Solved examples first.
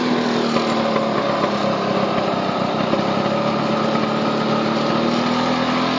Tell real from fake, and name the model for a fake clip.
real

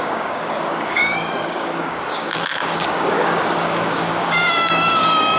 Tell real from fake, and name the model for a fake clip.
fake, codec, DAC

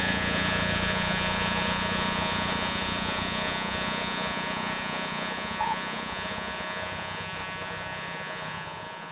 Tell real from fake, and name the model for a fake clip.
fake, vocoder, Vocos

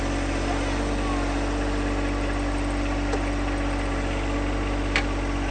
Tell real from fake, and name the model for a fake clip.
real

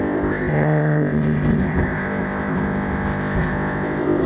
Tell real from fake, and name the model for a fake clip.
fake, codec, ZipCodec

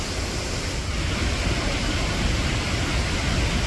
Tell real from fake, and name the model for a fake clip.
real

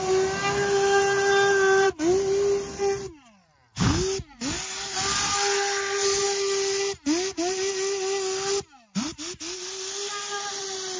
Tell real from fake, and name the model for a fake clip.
real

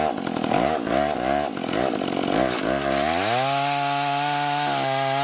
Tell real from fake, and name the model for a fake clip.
real